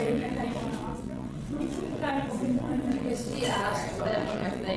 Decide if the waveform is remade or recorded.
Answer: remade